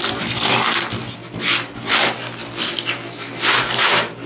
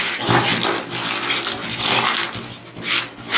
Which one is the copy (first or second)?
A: first